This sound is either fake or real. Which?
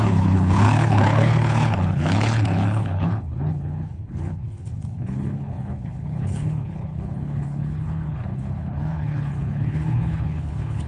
fake